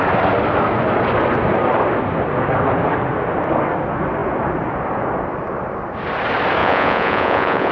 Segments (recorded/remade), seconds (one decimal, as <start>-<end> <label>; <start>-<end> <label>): 0.0-6.6 recorded; 6.6-7.7 remade

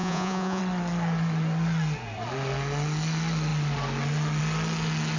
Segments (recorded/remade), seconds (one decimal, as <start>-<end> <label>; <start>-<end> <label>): 0.0-0.6 remade; 0.6-5.2 recorded

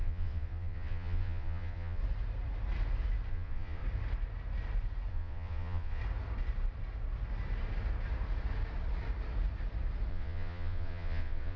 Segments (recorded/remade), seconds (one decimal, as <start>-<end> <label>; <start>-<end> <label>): 0.0-2.0 remade; 2.0-3.3 recorded; 3.3-3.8 remade; 3.8-5.1 recorded; 5.1-6.0 remade; 6.0-10.1 recorded; 10.1-11.6 remade

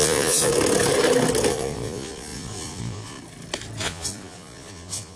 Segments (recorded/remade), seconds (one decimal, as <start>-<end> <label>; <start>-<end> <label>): 0.0-0.5 remade; 0.5-1.5 recorded; 1.5-3.2 remade; 3.2-3.8 recorded; 3.8-5.2 remade